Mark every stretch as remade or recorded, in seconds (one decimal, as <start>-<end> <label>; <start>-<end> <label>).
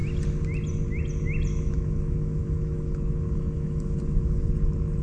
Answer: 0.0-1.5 recorded; 1.5-4.5 remade; 4.5-5.0 recorded